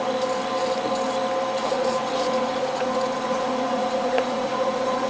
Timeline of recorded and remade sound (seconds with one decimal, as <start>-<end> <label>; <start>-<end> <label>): 0.0-1.6 recorded; 1.6-5.1 remade